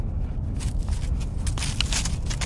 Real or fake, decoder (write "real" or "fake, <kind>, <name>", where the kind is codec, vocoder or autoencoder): real